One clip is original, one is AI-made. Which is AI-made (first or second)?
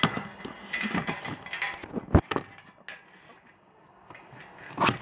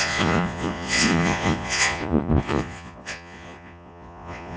second